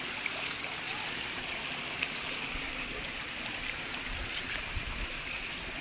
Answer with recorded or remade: recorded